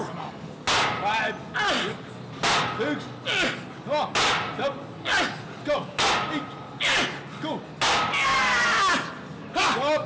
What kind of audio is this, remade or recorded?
recorded